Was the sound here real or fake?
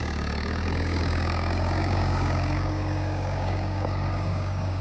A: fake